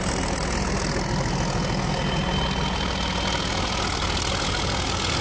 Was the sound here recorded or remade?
recorded